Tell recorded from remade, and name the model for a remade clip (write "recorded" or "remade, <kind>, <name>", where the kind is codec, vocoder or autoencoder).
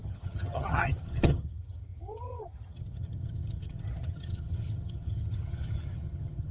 remade, vocoder, HiFi-GAN